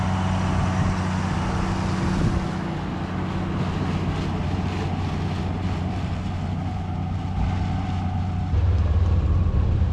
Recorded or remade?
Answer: recorded